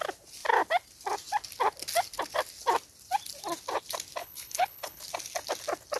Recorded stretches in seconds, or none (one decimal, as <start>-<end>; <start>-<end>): 0.0-4.2; 5.0-6.0